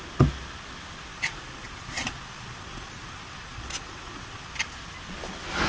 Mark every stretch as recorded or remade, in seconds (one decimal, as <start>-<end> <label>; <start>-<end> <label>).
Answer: 0.0-1.1 recorded; 1.1-4.5 remade; 4.5-5.7 recorded